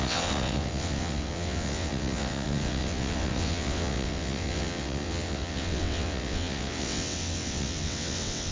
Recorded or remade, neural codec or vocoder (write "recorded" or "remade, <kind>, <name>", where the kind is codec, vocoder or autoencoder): remade, vocoder, WaveNeXt